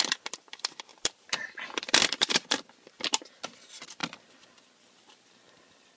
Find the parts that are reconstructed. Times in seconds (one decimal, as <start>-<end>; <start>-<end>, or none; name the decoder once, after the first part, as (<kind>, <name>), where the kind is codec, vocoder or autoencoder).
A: 0.0-4.0 (vocoder, BigVGAN v2)